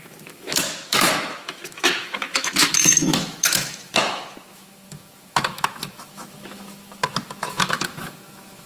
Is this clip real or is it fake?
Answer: fake